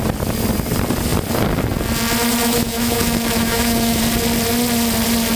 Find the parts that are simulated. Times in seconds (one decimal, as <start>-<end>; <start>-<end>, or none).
2.4-4.0